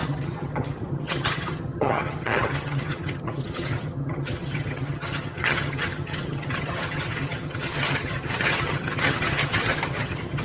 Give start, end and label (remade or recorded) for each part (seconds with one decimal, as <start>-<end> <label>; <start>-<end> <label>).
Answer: 0.0-10.4 remade